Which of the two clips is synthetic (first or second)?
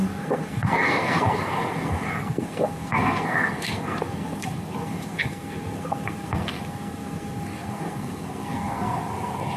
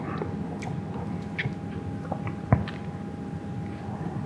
first